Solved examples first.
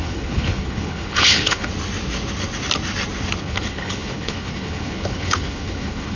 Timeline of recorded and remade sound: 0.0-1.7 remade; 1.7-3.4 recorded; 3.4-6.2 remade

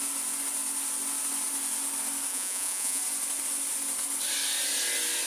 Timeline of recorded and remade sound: 0.0-2.3 recorded; 2.3-3.0 remade; 3.0-5.3 recorded

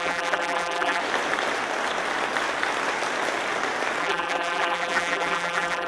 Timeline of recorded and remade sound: 0.0-1.0 remade; 1.0-4.0 recorded; 4.0-5.9 remade

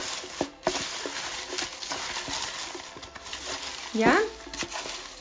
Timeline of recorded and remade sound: 0.0-5.2 recorded

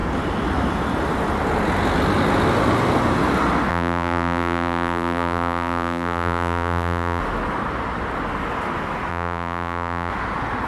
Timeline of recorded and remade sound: 0.0-3.7 recorded; 3.7-7.2 remade; 7.2-9.1 recorded; 9.1-10.1 remade; 10.1-10.7 recorded

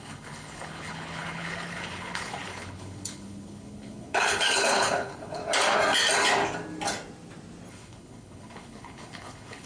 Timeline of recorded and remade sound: 0.0-5.4 remade; 5.4-7.7 recorded; 7.7-9.7 remade

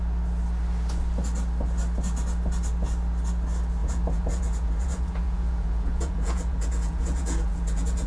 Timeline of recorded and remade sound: 0.0-3.8 recorded; 3.8-8.1 remade